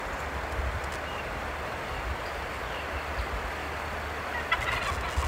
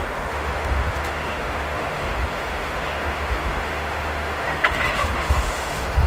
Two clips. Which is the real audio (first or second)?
first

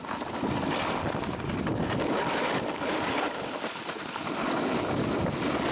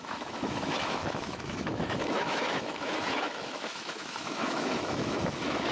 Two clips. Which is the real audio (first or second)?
first